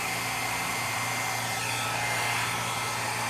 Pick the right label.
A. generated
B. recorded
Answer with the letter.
B